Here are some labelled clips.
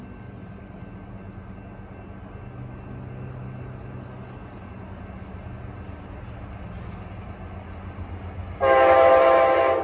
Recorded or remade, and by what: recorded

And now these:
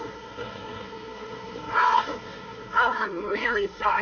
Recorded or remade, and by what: remade, codec, SNAC